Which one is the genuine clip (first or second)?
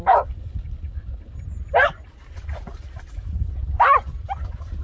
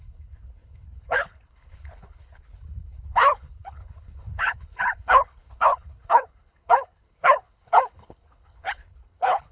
first